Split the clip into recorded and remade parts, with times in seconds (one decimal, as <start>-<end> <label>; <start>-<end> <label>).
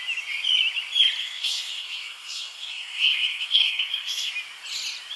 0.0-1.2 recorded; 1.2-4.3 remade; 4.3-5.2 recorded